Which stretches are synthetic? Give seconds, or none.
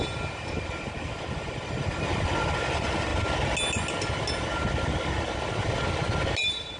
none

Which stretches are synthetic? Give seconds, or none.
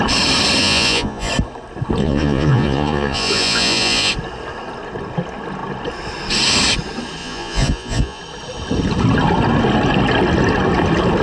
0.6-1.3 (vocoder, Vocos); 2.0-4.1; 7.2-8.2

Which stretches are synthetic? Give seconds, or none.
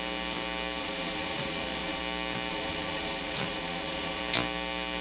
0.8-2.0 (vocoder, Vocos); 2.5-4.2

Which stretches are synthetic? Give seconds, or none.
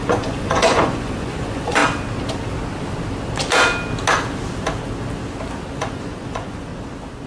0.0-1.8 (vocoder, Vocos); 5.7-6.7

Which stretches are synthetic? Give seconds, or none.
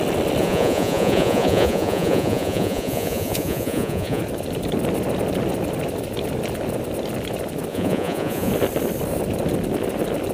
0.4-4.2 (vocoder, Vocos); 7.7-8.5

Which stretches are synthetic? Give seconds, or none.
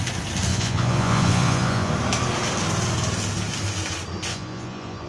0.5-1.9 (vocoder, Vocos); 4.3-5.1